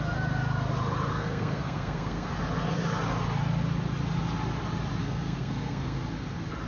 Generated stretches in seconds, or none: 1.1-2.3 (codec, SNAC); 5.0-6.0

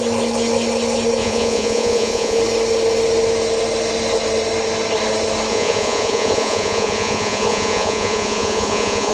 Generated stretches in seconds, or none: 1.2-2.4 (vocoder, Vocos); 5.5-9.1